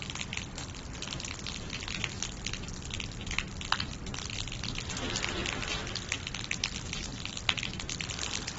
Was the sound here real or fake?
real